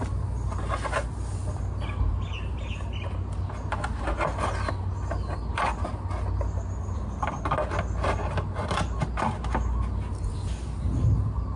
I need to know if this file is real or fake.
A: real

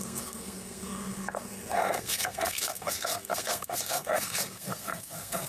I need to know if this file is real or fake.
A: fake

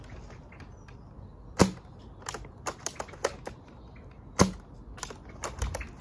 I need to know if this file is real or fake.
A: real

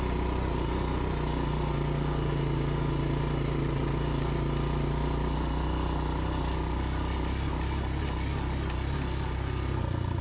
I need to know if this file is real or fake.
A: real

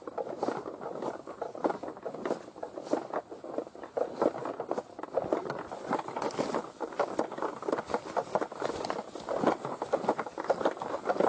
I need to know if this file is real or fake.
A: real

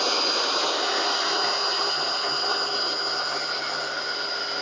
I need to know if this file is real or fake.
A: real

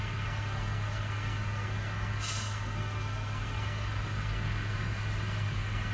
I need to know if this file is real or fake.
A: fake